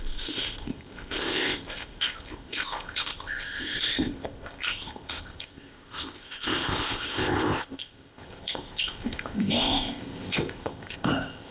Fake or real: fake